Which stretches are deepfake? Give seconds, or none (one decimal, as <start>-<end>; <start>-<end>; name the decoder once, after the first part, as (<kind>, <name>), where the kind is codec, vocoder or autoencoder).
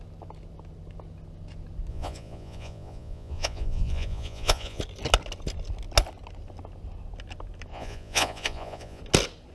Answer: 1.9-4.8 (vocoder, Vocos); 7.7-9.0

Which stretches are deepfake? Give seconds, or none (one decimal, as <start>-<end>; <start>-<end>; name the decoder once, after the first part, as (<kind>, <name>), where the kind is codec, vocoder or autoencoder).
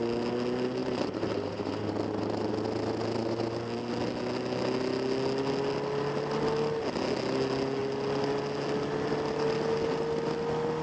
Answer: 0.8-2.5 (vocoder, BigVGAN v2)